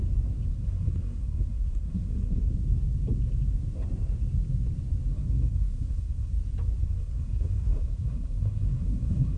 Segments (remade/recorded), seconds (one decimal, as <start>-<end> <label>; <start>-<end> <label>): 0.0-0.5 recorded; 0.5-2.5 remade; 2.5-5.1 recorded; 5.1-6.3 remade; 6.3-6.8 recorded; 6.8-9.4 remade